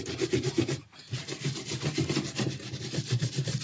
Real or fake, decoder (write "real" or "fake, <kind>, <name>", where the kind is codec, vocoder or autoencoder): real